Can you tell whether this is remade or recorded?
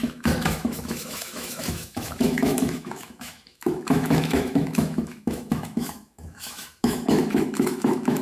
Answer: remade